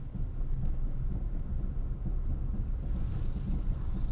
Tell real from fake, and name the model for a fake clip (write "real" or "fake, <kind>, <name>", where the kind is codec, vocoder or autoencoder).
real